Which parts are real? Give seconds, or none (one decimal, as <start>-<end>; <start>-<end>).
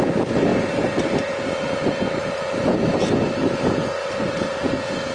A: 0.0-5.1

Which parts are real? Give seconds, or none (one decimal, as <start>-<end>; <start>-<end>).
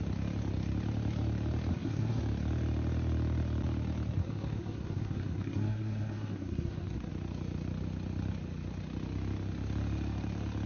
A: 0.0-1.7; 2.2-4.2; 7.1-10.7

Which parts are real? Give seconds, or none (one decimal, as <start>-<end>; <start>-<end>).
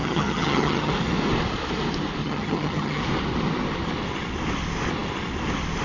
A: 0.9-2.2; 3.0-5.8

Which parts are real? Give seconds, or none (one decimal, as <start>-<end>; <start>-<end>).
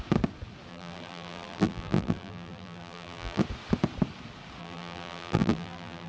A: 0.0-0.7; 3.4-4.6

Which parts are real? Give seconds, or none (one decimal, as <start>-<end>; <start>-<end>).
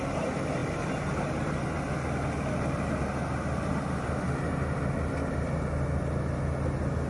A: 0.0-7.1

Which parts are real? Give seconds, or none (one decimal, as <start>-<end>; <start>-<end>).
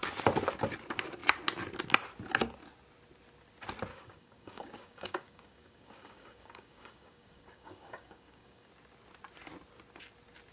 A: 0.0-3.9; 8.7-10.5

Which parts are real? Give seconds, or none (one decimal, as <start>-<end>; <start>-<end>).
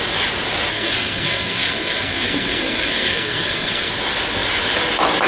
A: 0.0-0.7; 3.9-5.3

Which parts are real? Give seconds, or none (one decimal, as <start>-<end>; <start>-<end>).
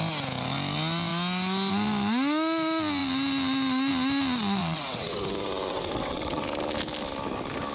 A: 0.0-4.6; 5.2-5.7; 6.4-7.7